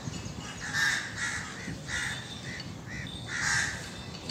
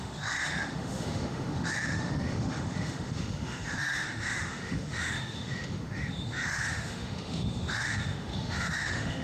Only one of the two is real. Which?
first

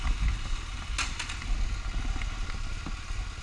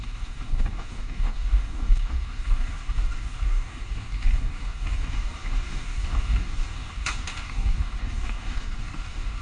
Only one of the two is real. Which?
first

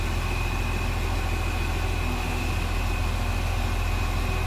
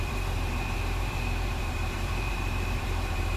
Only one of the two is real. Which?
first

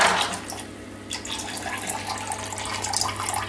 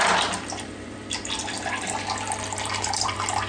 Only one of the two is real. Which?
first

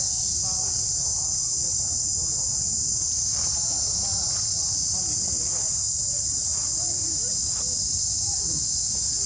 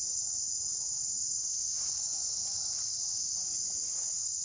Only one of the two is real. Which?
first